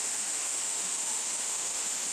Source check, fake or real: fake